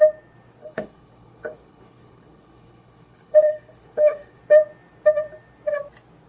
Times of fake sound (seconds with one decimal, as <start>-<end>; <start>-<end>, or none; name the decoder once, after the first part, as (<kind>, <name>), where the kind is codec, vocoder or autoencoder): 0.6-4.4 (codec, HILCodec)